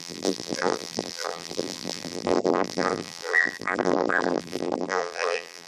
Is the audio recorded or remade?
remade